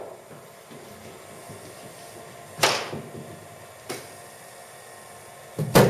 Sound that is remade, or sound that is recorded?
recorded